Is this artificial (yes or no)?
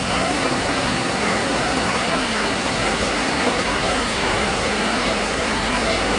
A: yes